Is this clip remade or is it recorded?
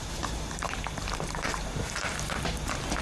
remade